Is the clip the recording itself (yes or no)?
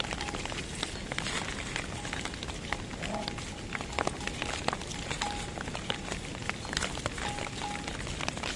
yes